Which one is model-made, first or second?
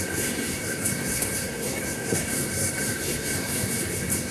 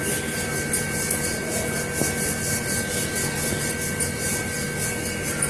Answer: first